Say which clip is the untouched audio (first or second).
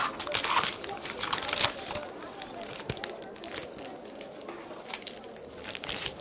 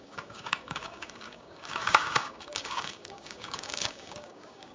first